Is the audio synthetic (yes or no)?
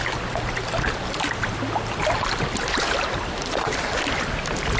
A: no